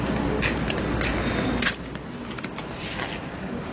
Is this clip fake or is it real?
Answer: real